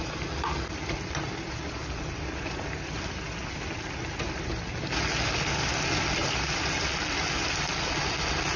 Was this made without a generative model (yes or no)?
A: yes